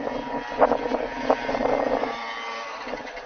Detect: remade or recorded recorded